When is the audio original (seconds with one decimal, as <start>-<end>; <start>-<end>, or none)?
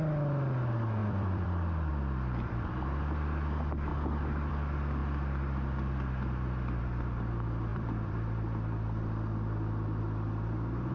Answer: 0.0-1.0; 1.9-3.9; 4.5-7.7; 10.0-10.9